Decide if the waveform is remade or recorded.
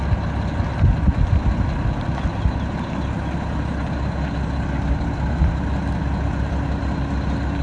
recorded